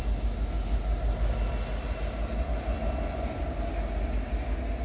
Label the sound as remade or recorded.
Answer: recorded